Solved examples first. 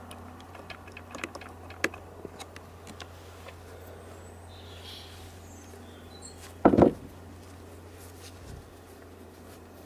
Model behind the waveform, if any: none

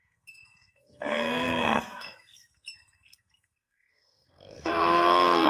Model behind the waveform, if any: codec, SNAC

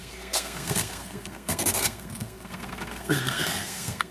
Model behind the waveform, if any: codec, SNAC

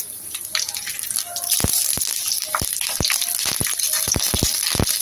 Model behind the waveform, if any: none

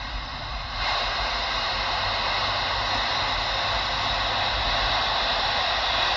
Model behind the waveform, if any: none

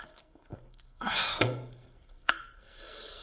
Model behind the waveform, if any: codec, SNAC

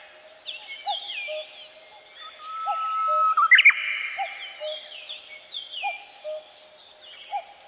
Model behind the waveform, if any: none